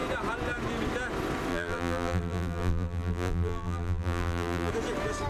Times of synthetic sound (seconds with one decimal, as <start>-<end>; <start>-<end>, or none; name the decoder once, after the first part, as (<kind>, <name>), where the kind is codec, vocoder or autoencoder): 1.5-4.7 (vocoder, BigVGAN v2)